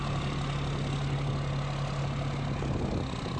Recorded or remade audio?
recorded